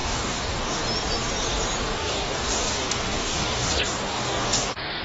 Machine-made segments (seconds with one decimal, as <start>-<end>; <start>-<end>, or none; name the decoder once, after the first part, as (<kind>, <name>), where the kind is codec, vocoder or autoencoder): 0.0-0.8 (codec, DAC); 1.9-5.0